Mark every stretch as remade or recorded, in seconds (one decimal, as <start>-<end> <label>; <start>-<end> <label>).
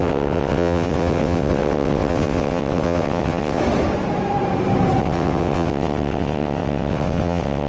0.0-3.6 remade; 3.6-5.0 recorded; 5.0-7.7 remade